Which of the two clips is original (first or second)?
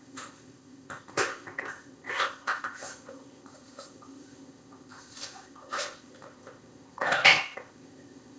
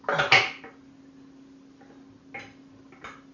second